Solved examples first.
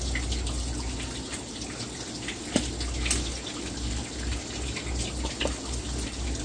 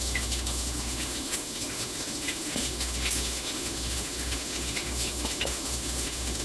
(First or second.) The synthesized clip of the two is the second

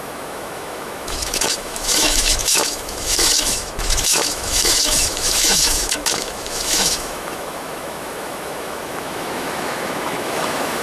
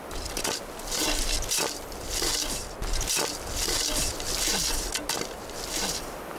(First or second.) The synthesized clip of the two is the first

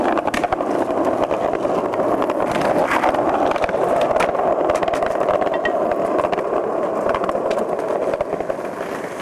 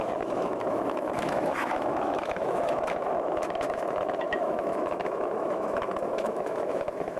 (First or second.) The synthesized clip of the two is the second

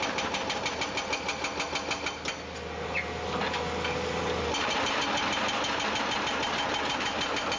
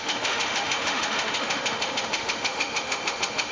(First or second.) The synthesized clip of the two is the second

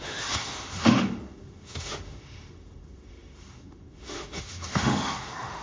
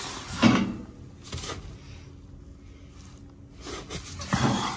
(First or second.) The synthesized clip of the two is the first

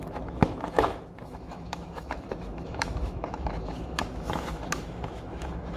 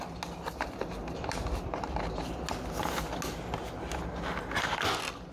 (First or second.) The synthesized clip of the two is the first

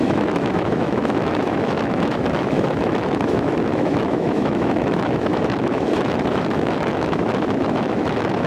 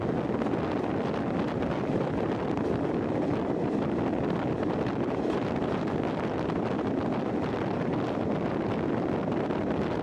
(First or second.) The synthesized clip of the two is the first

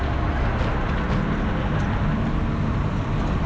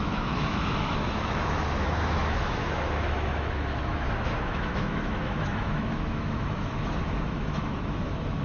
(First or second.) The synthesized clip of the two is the second